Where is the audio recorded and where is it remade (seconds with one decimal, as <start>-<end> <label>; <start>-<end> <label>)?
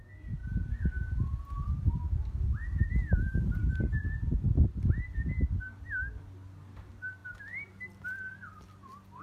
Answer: 0.0-9.2 recorded